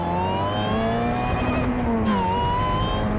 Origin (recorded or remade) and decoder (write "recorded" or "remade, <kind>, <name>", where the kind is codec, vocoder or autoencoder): recorded